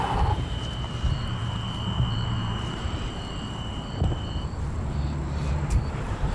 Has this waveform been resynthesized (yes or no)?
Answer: yes